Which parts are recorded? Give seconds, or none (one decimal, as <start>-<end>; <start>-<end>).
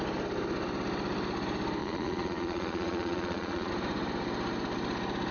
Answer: 0.0-1.8; 3.7-5.3